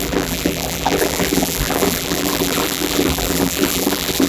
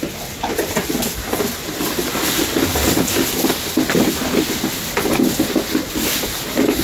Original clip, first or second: second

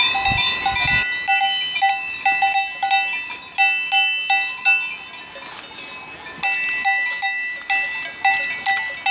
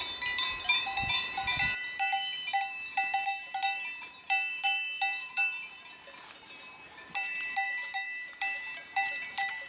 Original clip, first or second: first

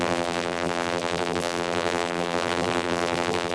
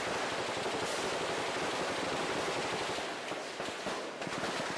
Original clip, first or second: second